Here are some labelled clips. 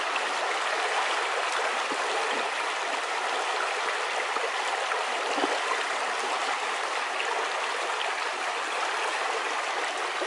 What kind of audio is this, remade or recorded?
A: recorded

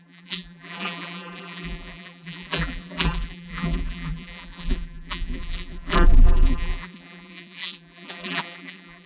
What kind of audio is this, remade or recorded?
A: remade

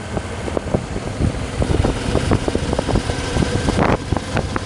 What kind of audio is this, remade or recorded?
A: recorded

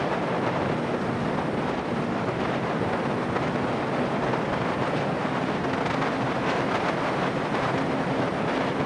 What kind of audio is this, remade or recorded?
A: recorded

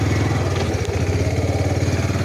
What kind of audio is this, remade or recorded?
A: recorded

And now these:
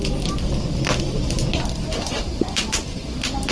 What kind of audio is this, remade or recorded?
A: recorded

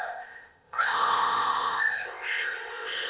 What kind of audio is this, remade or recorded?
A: remade